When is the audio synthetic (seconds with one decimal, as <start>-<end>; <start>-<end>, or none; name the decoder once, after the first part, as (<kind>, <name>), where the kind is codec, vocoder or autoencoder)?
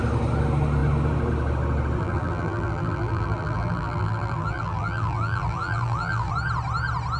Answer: 2.0-6.3 (vocoder, BigVGAN v2)